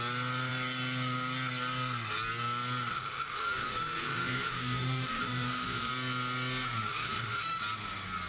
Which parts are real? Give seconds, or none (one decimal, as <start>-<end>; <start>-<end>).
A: 0.0-2.9; 5.9-6.9; 7.6-8.3